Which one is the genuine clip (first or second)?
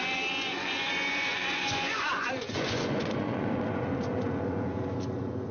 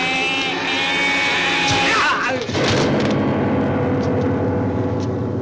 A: second